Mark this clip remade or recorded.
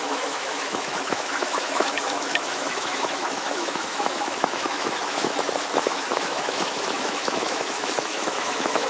remade